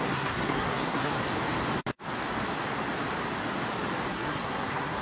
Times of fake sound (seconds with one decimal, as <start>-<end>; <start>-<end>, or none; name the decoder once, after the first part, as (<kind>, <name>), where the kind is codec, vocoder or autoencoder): 0.0-1.1 (codec, SNAC); 4.1-5.0